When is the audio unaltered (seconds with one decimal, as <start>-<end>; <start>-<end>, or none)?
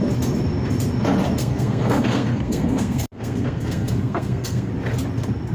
0.0-1.4; 4.7-5.5